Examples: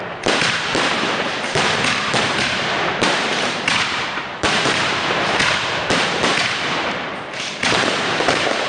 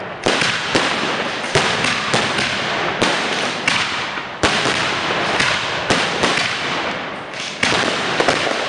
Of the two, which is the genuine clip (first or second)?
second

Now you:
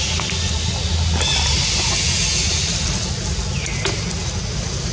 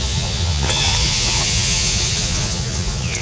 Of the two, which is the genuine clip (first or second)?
first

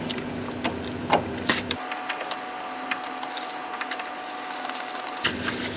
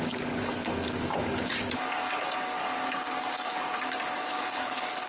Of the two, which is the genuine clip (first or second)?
first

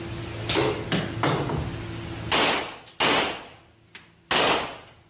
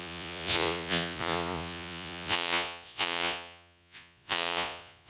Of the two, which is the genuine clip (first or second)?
first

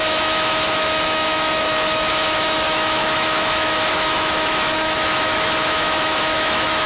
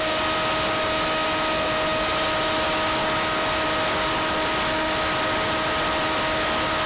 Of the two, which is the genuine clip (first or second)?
second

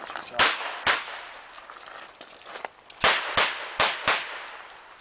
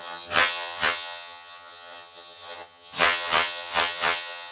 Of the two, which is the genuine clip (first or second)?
first